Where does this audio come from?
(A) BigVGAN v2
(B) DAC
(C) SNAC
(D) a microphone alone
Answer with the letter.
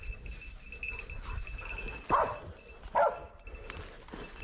D